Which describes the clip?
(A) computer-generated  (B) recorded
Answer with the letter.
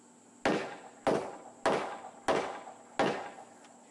B